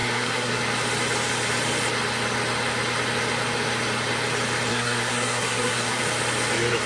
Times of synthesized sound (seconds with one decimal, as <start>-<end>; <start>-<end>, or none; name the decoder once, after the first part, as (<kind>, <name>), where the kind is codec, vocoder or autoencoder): 0.0-0.6 (codec, SNAC); 4.7-6.0